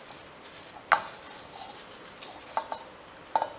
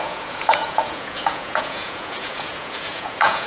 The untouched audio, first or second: first